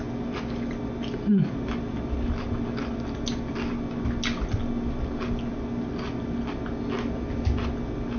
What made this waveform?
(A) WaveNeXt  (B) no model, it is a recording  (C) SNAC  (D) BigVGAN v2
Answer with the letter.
B